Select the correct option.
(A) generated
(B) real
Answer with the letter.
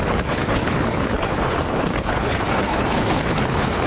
A